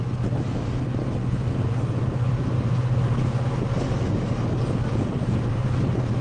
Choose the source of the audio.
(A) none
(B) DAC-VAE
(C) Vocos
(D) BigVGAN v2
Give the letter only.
A